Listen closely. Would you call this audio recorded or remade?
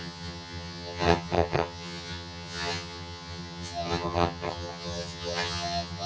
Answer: remade